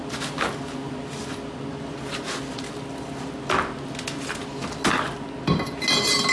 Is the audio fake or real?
real